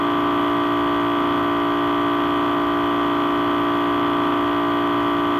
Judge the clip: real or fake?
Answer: real